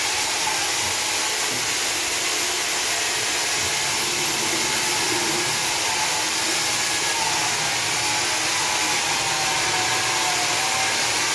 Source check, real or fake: real